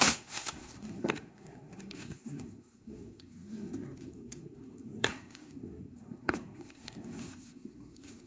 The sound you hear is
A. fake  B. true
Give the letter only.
A